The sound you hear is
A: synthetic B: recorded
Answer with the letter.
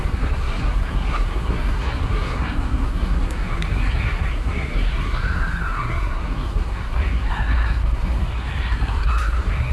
A